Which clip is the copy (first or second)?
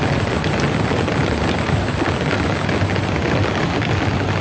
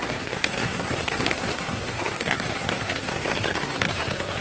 second